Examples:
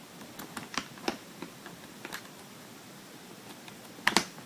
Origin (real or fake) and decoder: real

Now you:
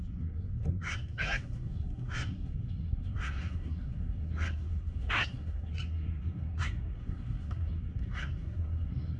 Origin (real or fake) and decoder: fake, codec, SNAC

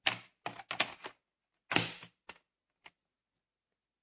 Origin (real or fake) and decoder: real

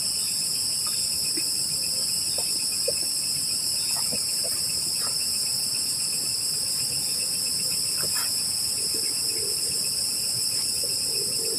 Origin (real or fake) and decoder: real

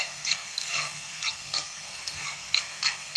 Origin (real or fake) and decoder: fake, codec, SNAC